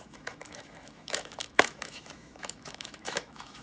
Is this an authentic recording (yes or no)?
no